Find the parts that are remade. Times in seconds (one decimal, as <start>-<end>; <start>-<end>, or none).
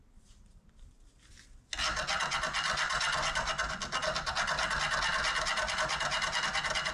none